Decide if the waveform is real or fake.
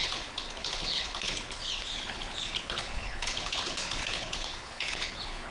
fake